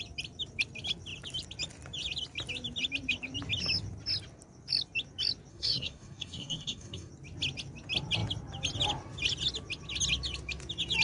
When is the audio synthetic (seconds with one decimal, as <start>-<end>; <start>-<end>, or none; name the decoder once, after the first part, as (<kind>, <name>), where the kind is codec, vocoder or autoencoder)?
5.5-7.1 (codec, SNAC)